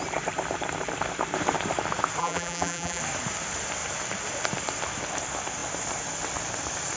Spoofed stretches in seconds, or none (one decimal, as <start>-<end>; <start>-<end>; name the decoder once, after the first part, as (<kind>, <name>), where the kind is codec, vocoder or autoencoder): 2.2-3.0 (vocoder, BigVGAN v2)